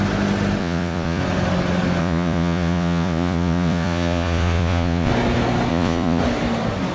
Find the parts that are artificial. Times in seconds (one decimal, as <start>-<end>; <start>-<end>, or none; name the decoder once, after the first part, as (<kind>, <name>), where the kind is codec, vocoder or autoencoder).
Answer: 0.6-1.2 (vocoder, Vocos); 2.0-5.1; 5.7-6.2